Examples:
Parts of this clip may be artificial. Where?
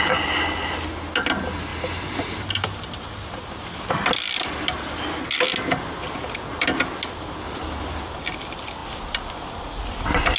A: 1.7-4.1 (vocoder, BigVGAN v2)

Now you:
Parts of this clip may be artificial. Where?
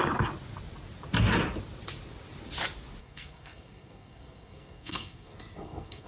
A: 3.0-6.1 (codec, SNAC)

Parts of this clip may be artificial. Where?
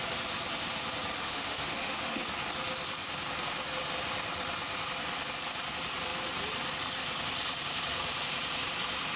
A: 1.2-2.2 (autoencoder, DAC-VAE)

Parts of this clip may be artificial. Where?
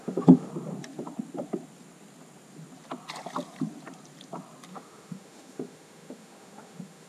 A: 0.0-0.5 (autoencoder, DAC-VAE); 4.7-7.1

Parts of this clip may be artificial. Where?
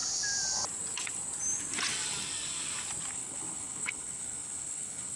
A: 3.1-5.2 (codec, HILCodec)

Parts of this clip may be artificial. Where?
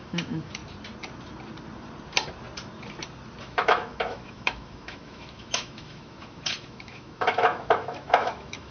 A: 0.0-0.6 (autoencoder, DAC-VAE); 3.4-8.7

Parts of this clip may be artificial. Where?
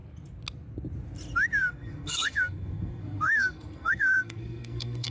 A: 1.6-5.1 (codec, SNAC)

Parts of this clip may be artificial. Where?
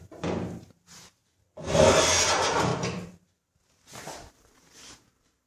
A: 0.0-1.2 (vocoder, BigVGAN v2); 1.9-2.7; 4.3-5.5